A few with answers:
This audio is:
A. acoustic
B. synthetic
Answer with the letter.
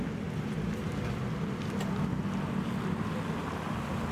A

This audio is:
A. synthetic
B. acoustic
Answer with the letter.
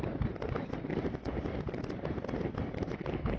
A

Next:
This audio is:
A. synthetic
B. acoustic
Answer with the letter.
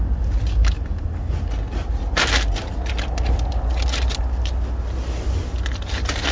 B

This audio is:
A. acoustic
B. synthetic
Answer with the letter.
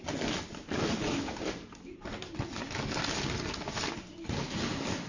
A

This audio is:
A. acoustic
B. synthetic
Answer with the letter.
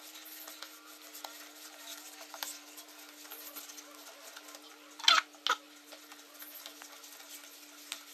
A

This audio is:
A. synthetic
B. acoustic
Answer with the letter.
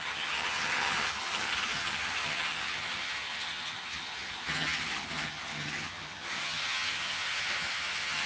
A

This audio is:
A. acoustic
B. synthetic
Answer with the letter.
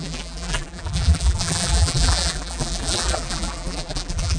B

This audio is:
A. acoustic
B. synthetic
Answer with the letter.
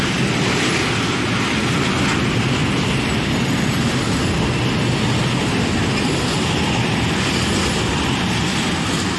A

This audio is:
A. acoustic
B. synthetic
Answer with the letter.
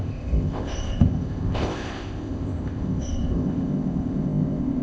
B